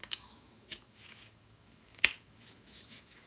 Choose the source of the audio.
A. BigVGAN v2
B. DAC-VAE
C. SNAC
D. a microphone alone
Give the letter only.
B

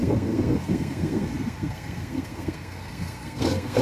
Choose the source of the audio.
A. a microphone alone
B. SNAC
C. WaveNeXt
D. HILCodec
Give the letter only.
B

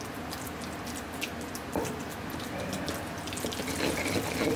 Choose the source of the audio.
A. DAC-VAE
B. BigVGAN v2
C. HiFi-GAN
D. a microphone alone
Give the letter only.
D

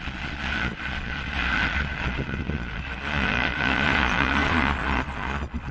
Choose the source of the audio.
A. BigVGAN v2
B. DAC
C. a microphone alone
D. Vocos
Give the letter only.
D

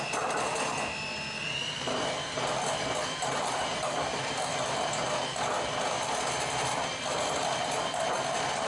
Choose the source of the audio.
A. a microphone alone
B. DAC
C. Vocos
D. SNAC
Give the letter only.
A